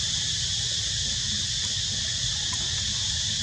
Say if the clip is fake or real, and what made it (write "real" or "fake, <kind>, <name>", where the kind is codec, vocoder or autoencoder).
real